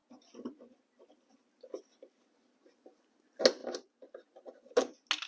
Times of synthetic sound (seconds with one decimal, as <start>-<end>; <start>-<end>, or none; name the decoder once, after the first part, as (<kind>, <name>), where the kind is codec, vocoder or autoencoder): none